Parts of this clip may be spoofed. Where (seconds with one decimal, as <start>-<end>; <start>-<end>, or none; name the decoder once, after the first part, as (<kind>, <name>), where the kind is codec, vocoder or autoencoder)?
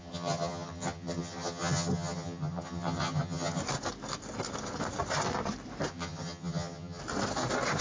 0.0-3.6 (vocoder, HiFi-GAN); 5.9-7.0